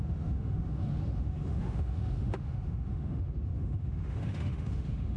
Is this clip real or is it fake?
fake